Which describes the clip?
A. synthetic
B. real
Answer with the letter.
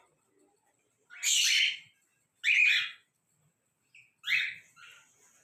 B